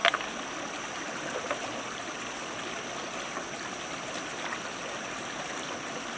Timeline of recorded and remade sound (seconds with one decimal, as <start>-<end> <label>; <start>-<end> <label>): 0.0-6.2 recorded